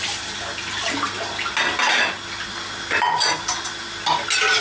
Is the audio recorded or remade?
recorded